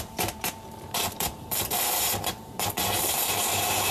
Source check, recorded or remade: remade